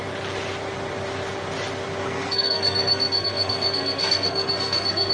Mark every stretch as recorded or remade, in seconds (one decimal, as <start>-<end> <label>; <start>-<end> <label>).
0.0-2.0 recorded; 2.0-5.1 remade